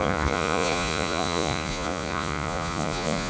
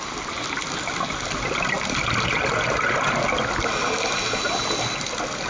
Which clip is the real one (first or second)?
second